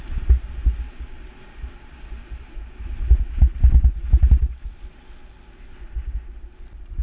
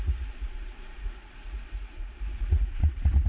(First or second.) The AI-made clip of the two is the second